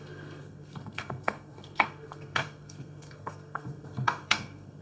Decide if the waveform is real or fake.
fake